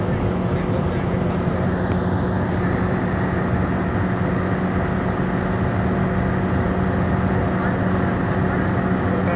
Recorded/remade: recorded